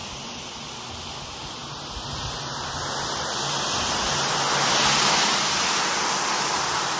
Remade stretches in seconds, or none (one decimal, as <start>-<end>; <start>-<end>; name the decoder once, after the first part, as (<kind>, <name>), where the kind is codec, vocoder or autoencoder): none